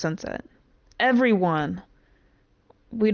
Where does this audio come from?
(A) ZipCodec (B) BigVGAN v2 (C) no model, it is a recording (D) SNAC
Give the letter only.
C